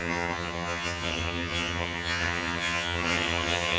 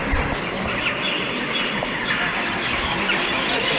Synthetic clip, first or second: first